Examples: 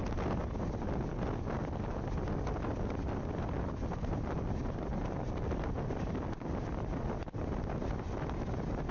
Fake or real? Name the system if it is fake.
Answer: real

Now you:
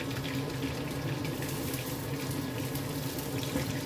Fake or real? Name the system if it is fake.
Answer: real